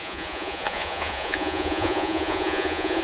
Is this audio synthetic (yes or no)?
yes